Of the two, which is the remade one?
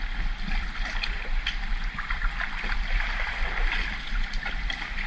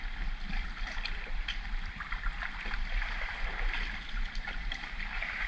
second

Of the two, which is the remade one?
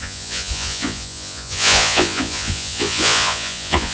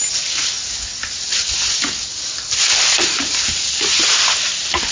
first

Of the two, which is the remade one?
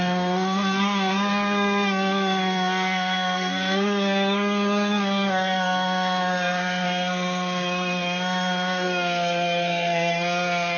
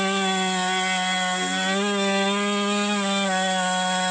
first